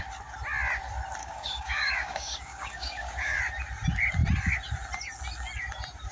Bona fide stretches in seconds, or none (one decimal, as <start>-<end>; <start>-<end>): 0.0-1.2; 3.4-6.1